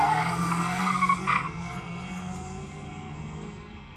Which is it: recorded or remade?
remade